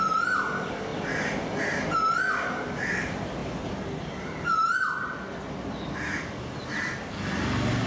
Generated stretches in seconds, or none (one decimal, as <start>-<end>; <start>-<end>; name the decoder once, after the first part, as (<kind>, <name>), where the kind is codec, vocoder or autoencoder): none